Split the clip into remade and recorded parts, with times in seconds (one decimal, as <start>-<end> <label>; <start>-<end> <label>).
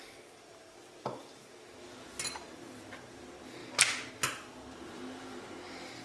0.0-6.0 recorded